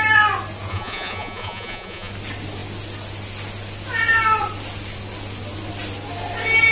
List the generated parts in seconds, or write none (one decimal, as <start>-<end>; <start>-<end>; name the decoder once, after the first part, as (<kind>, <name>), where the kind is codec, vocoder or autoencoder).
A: 0.7-2.1 (vocoder, Vocos)